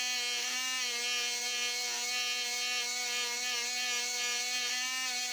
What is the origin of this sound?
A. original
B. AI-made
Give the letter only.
A